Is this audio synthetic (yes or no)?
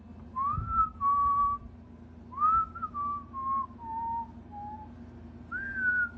no